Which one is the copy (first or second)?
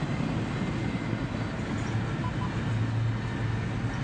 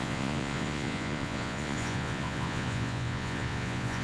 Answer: second